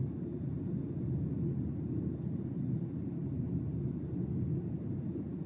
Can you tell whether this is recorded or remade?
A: recorded